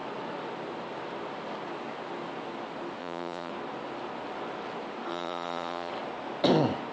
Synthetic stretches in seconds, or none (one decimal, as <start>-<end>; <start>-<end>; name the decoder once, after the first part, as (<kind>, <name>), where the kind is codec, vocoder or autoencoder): 3.0-3.5 (vocoder, Vocos); 5.1-5.9